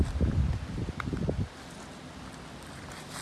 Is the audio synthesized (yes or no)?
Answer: no